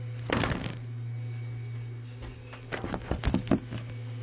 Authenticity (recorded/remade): recorded